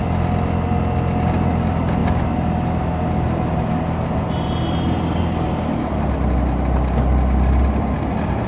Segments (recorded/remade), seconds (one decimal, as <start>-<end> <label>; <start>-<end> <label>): 0.0-8.5 recorded